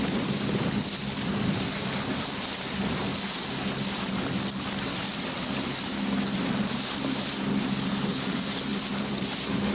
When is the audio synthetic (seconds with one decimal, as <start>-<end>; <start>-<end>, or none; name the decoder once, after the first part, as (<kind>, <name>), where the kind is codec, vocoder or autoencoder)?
none